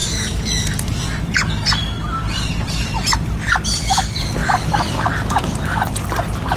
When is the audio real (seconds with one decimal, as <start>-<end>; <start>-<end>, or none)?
0.0-6.6